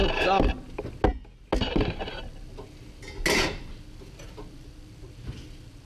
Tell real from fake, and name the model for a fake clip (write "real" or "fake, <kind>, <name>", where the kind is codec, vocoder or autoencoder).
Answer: real